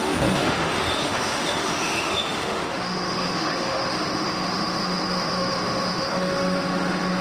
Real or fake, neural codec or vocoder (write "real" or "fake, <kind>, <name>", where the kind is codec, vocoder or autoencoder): fake, autoencoder, DAC-VAE